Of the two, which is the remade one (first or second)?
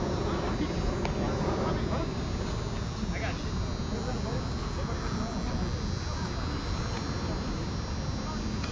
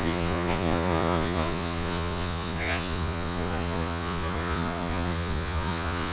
second